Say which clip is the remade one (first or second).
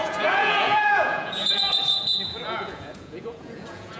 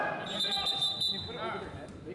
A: first